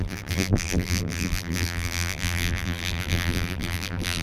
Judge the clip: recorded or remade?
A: remade